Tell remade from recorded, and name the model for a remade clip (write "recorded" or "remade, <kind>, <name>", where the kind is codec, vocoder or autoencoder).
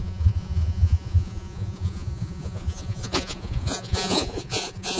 remade, vocoder, Vocos